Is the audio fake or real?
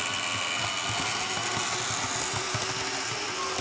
real